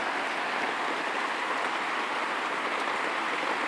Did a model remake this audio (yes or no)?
no